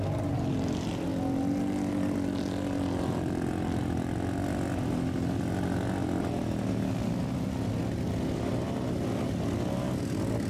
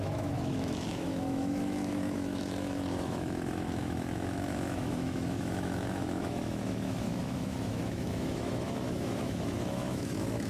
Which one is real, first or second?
first